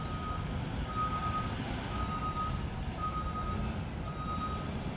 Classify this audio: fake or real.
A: real